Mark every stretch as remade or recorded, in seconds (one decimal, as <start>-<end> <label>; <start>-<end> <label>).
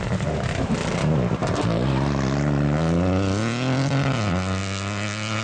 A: 0.0-5.4 recorded